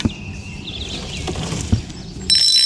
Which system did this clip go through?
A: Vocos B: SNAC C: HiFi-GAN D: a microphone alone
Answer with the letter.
D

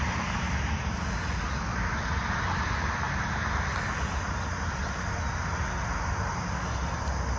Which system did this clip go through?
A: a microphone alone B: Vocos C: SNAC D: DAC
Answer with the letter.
A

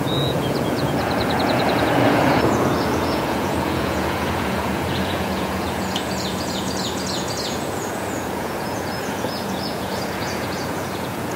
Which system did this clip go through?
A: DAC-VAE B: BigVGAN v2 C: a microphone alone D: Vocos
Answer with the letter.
D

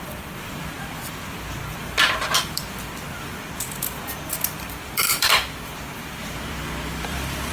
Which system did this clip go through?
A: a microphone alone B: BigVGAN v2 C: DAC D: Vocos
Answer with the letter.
B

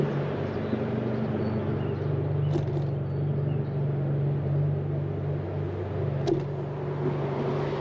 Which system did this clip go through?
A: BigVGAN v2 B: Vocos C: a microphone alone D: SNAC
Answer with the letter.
C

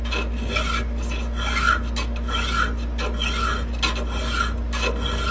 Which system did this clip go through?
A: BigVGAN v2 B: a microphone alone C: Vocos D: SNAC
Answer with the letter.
B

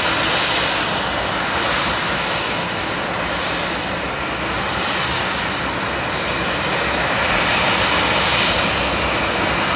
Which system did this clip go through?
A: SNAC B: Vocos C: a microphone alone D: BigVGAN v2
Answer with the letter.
C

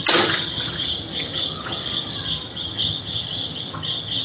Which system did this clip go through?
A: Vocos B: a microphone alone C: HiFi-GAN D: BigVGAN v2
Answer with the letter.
C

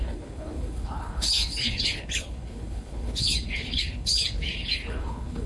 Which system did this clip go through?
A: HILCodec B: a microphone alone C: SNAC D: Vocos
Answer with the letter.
A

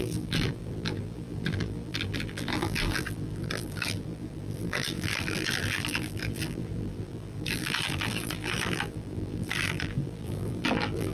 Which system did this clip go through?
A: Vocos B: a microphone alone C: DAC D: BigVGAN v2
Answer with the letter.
D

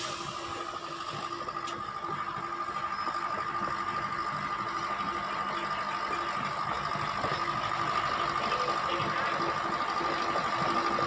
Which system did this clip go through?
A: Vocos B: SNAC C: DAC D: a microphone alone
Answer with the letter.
D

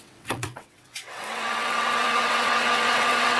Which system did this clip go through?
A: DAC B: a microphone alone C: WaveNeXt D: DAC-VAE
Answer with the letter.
C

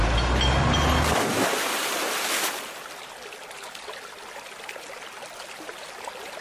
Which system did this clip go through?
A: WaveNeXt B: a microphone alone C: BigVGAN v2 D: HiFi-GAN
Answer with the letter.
B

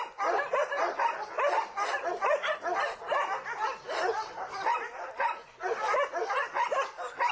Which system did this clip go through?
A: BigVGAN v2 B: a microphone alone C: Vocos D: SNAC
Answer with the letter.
B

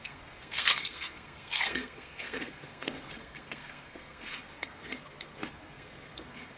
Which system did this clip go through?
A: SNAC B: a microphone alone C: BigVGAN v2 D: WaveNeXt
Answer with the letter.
A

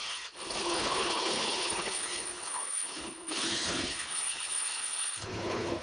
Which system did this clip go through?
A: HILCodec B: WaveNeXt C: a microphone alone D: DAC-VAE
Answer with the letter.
A